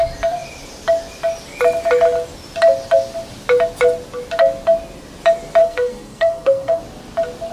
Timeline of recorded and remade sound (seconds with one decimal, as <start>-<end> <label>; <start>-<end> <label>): 0.0-5.6 recorded; 5.6-6.8 remade; 6.8-7.5 recorded